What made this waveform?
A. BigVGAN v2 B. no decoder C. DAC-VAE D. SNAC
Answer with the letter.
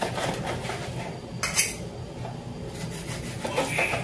B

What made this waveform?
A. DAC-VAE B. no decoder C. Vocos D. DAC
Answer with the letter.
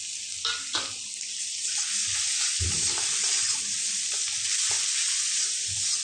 B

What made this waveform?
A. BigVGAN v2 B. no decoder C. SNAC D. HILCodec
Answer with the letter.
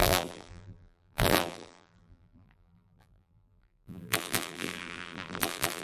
A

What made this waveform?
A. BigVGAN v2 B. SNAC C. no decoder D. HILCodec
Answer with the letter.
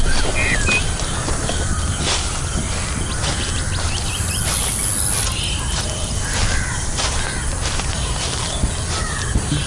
C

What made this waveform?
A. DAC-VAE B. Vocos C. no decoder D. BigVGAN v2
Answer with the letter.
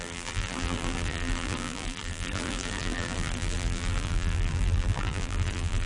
D